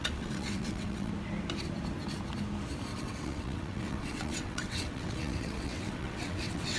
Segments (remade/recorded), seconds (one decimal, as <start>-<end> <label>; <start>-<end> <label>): 0.0-1.1 remade; 1.1-2.9 recorded; 2.9-6.8 remade